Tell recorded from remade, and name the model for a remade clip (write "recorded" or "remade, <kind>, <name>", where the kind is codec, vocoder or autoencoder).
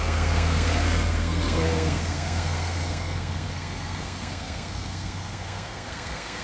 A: remade, codec, SNAC